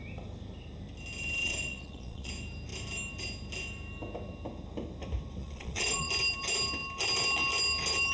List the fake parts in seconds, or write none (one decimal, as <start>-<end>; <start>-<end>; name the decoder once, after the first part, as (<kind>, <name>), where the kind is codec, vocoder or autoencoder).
1.4-2.3 (vocoder, Vocos); 5.4-6.1